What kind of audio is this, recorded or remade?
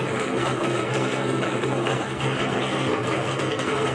remade